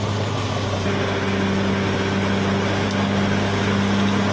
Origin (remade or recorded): recorded